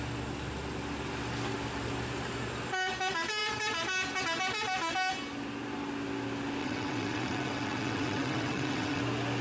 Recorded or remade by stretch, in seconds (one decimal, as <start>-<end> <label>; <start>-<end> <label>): 0.0-6.6 recorded; 6.6-9.0 remade; 9.0-9.4 recorded